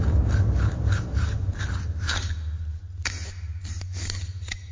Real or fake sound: real